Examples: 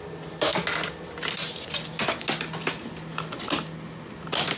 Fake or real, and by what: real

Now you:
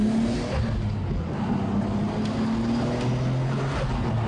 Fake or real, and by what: real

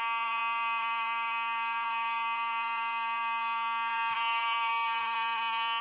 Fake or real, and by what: fake, vocoder, BigVGAN v2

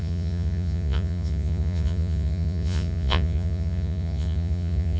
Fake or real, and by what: fake, vocoder, Vocos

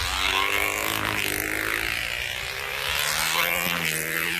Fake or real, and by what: real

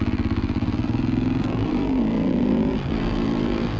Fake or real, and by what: fake, vocoder, BigVGAN v2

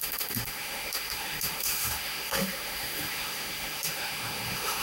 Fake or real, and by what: fake, autoencoder, DAC-VAE